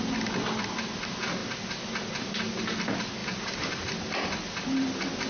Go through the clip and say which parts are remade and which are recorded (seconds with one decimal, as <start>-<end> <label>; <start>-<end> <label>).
0.0-3.2 recorded; 3.2-3.8 remade; 3.8-5.3 recorded